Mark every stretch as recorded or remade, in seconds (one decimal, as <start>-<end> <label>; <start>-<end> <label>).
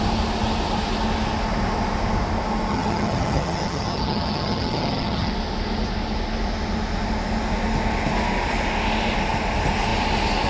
0.0-2.7 recorded; 2.7-5.3 remade; 5.3-10.5 recorded